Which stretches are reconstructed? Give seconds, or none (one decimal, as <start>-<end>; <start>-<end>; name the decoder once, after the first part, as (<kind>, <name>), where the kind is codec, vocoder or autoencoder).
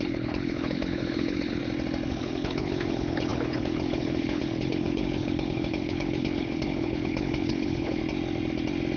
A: 0.0-1.6 (codec, HILCodec); 2.1-8.0